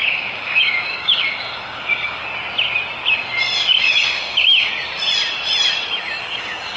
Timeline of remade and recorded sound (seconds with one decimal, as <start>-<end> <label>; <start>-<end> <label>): 0.0-2.2 remade; 2.2-3.8 recorded; 3.8-4.7 remade; 4.7-6.2 recorded; 6.2-6.8 remade